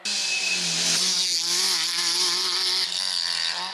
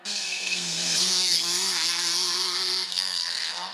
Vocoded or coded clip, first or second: second